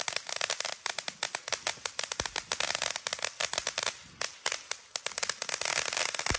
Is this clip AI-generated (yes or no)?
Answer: no